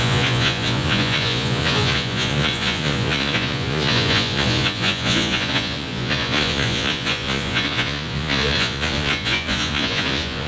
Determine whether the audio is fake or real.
fake